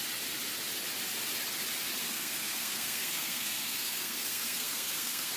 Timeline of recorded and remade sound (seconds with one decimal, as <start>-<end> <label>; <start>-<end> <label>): 0.0-2.0 recorded; 2.0-5.4 remade